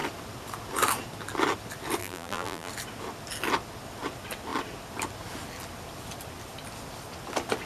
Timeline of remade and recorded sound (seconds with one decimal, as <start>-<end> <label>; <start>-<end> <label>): 0.0-2.0 recorded; 2.0-2.7 remade; 2.7-7.7 recorded